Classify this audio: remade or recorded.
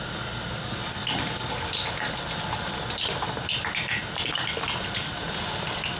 recorded